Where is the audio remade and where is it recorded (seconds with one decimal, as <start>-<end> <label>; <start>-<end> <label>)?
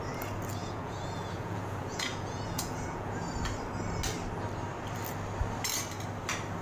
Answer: 0.0-0.6 recorded; 0.6-3.3 remade; 3.3-6.6 recorded